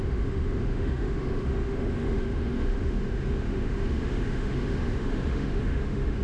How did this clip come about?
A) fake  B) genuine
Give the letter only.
A